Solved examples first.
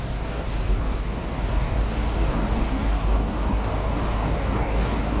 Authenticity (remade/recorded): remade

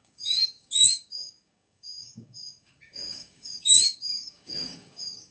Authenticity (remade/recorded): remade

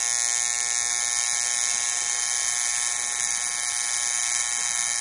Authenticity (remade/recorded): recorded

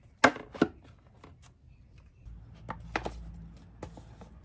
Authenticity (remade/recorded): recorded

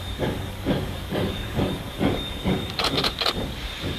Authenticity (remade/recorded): remade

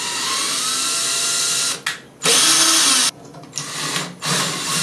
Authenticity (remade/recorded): recorded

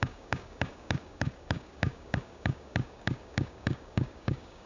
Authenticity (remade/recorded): remade